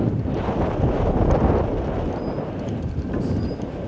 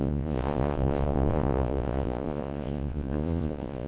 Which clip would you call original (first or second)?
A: first